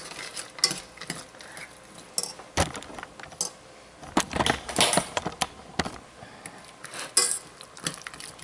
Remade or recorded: recorded